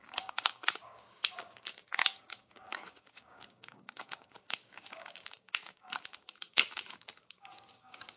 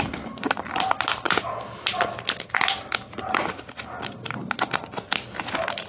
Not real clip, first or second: first